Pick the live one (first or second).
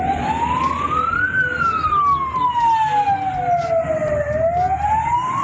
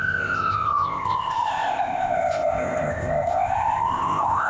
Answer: first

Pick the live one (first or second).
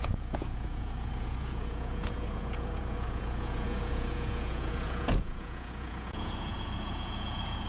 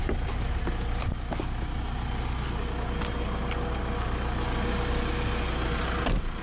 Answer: second